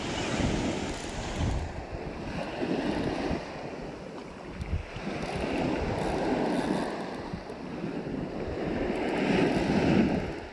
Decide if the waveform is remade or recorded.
recorded